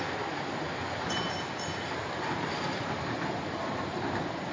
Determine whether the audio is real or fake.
fake